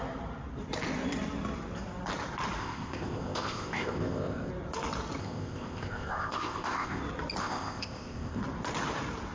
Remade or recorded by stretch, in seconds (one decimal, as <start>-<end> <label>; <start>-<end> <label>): 0.0-2.6 recorded; 2.6-4.5 remade; 4.5-5.2 recorded; 5.2-7.0 remade; 7.0-7.4 recorded; 7.4-8.4 remade; 8.4-9.3 recorded